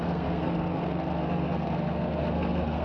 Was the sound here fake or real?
fake